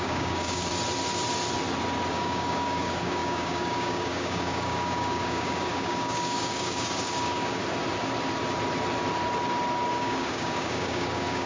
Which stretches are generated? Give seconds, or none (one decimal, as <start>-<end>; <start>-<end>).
0.0-0.7; 2.1-7.6; 9.9-11.5